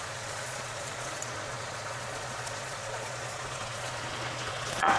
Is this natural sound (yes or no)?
no